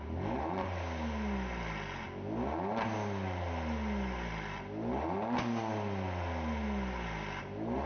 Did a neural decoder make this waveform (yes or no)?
no